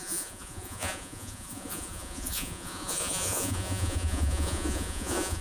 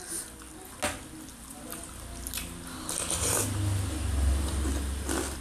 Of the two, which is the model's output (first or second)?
first